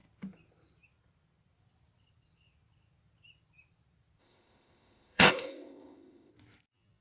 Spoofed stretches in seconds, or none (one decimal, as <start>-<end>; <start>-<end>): 4.2-6.3